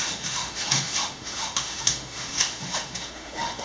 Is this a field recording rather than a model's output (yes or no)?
no